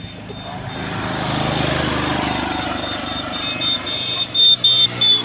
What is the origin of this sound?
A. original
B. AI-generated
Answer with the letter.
A